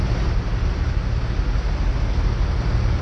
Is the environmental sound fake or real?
real